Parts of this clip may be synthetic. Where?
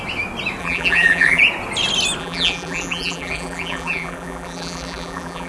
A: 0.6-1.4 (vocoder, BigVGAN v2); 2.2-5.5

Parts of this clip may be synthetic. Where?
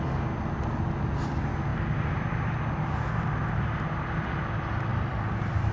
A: 4.9-5.7 (vocoder, BigVGAN v2)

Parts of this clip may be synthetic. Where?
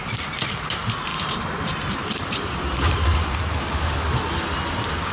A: 1.1-4.2 (vocoder, BigVGAN v2)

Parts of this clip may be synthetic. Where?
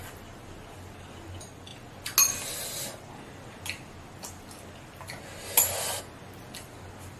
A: none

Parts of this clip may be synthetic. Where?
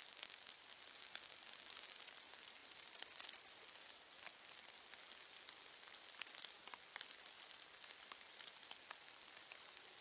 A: none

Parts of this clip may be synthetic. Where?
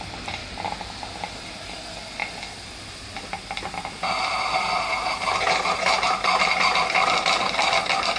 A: none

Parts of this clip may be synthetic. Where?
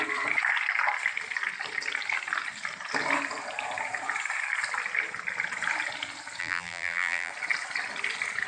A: 6.4-7.3 (vocoder, BigVGAN v2)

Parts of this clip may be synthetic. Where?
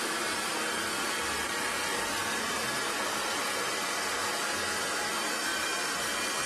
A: 0.5-3.4 (vocoder, BigVGAN v2); 5.5-6.1